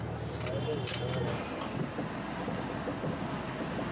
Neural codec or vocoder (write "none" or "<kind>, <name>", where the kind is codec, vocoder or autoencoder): none